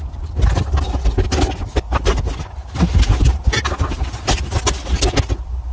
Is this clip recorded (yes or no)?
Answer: yes